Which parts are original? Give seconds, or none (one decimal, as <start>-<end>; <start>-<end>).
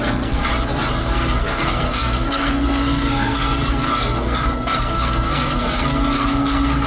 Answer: 0.5-1.0